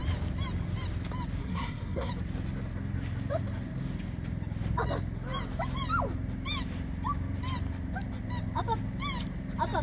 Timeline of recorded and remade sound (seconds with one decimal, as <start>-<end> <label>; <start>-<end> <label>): 0.0-1.4 recorded; 1.4-2.1 remade; 2.1-9.8 recorded